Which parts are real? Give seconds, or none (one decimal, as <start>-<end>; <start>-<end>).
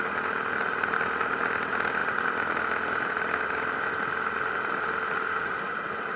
0.0-6.2